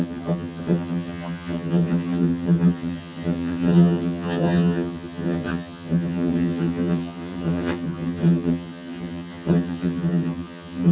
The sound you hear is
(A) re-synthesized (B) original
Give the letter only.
A